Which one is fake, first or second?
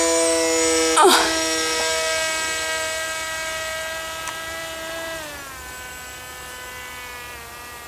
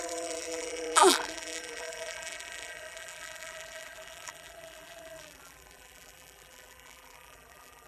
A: second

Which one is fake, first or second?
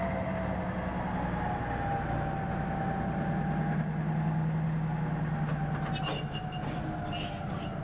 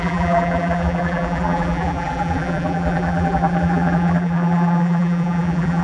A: second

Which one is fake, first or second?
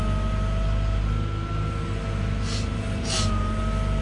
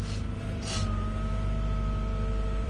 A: second